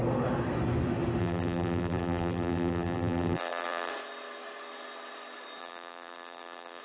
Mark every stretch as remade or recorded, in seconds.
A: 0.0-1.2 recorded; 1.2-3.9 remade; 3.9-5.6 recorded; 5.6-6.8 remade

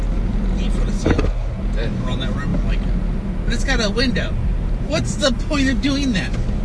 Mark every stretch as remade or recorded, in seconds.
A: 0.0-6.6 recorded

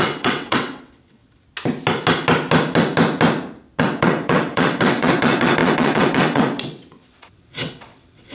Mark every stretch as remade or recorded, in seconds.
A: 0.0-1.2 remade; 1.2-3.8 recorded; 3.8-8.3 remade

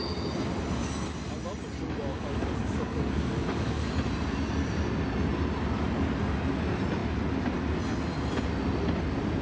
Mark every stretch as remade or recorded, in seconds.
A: 0.0-2.1 recorded; 2.1-3.9 remade; 3.9-9.4 recorded

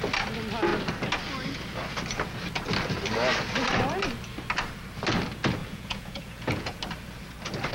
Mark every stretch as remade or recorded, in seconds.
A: 0.0-5.6 recorded; 5.6-6.8 remade; 6.8-7.7 recorded